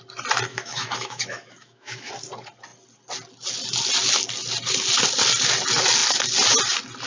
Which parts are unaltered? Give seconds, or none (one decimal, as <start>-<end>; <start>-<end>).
0.0-0.5; 2.1-7.1